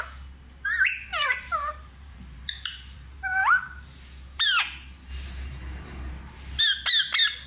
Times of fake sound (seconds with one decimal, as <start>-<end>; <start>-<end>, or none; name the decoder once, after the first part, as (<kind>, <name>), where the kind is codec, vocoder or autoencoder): 1.1-4.6 (vocoder, BigVGAN v2)